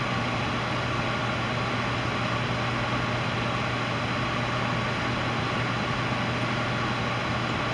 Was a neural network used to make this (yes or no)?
no